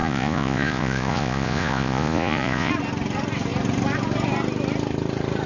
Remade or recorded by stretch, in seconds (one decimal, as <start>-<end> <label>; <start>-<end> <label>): 0.0-2.7 remade; 2.7-5.5 recorded